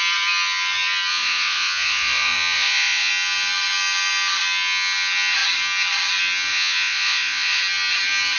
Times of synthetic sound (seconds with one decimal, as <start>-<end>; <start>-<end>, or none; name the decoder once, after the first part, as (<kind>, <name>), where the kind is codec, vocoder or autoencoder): 1.1-3.1 (vocoder, Vocos); 6.5-7.6